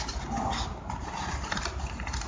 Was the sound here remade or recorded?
recorded